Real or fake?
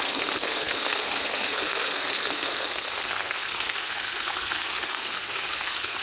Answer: fake